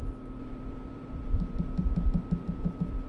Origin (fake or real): fake